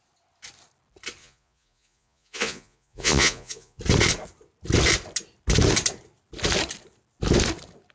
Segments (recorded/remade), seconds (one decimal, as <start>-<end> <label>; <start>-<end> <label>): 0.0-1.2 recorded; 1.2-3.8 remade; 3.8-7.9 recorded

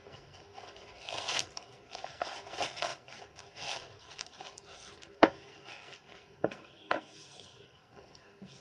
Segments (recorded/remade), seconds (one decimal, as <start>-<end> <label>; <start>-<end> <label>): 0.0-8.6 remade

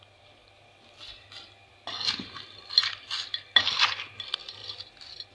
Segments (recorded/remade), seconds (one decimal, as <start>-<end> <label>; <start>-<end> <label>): 0.0-5.3 recorded

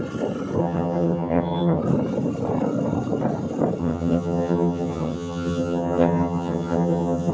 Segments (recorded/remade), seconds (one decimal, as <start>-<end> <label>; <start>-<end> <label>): 0.0-0.6 recorded; 0.6-1.8 remade; 1.8-3.8 recorded; 3.8-7.3 remade

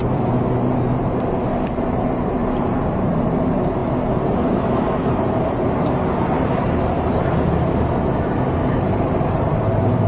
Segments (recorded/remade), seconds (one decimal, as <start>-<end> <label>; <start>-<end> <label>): 0.0-2.4 remade; 2.4-3.2 recorded; 3.2-10.1 remade

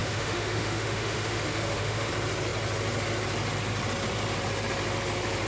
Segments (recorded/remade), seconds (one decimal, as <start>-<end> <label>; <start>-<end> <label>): 0.0-2.1 remade; 2.1-5.5 recorded

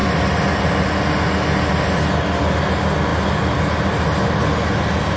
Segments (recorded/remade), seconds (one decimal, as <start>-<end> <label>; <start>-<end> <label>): 0.0-5.2 recorded

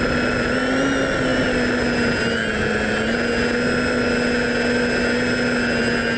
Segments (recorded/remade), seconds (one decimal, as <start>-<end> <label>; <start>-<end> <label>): 0.0-6.2 recorded